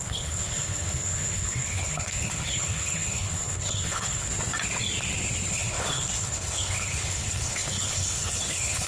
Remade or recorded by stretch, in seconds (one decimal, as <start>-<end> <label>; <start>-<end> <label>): 0.0-4.3 remade; 4.3-5.5 recorded; 5.5-8.9 remade